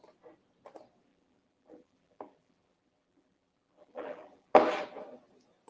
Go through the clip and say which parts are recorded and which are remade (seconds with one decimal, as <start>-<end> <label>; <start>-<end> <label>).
0.0-1.1 recorded; 1.1-4.5 remade; 4.5-5.7 recorded